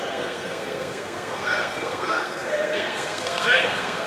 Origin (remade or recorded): remade